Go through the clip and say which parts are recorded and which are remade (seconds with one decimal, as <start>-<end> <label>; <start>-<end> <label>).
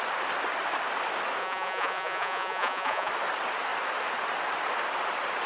0.0-1.4 recorded; 1.4-3.1 remade; 3.1-5.5 recorded